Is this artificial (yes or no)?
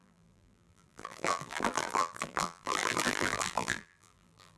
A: yes